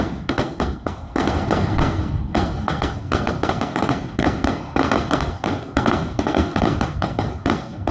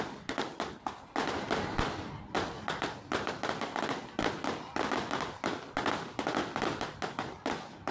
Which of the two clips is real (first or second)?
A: second